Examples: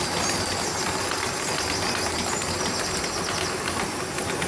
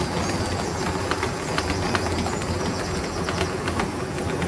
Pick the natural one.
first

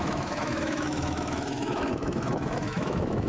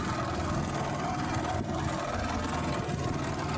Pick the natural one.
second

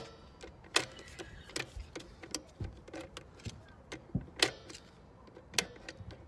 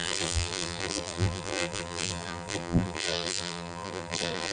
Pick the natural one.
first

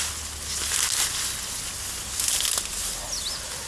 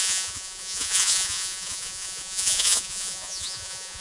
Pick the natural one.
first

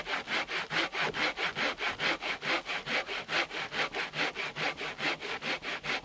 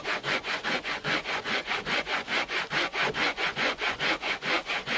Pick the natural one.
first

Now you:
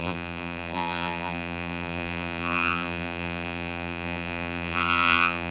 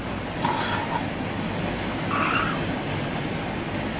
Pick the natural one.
second